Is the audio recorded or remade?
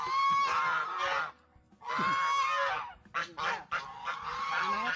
recorded